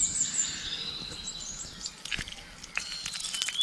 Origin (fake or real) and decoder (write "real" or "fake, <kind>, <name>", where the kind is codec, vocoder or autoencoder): real